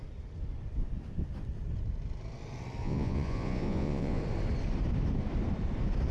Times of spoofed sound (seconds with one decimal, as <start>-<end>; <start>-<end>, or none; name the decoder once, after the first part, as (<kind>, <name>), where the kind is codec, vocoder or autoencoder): 2.8-4.2 (vocoder, Vocos)